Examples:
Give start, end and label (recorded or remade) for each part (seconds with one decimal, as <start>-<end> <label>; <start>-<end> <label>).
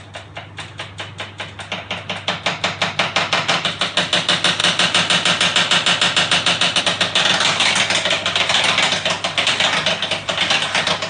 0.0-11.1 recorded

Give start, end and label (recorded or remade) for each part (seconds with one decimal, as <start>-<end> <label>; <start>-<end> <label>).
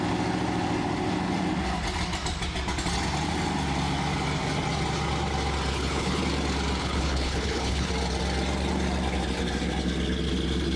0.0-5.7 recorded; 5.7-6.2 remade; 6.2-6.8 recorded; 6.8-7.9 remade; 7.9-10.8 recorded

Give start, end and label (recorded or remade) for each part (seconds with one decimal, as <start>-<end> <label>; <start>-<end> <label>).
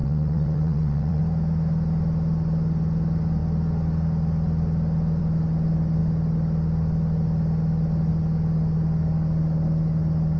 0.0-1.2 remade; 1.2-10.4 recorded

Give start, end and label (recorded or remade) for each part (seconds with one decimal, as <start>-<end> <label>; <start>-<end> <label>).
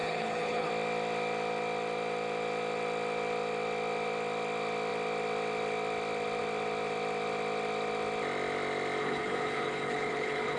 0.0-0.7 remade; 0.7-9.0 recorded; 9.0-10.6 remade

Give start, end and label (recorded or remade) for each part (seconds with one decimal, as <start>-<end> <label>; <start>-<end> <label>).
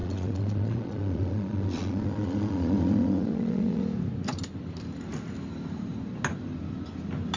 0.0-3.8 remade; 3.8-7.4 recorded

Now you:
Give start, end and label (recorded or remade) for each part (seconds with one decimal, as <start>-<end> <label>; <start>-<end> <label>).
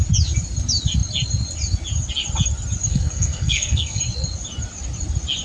0.0-2.9 recorded; 2.9-4.0 remade; 4.0-5.4 recorded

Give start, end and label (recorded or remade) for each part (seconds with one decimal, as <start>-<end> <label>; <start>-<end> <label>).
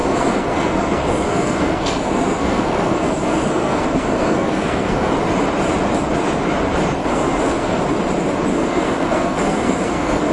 0.0-5.1 remade; 5.1-7.0 recorded; 7.0-7.8 remade; 7.8-8.5 recorded; 8.5-10.3 remade